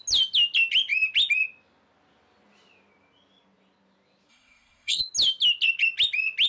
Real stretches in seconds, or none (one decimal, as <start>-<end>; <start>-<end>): 0.0-4.3; 5.0-6.5